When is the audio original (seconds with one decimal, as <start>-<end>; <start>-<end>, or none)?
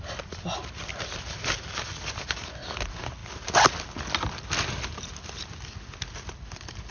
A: 0.0-6.9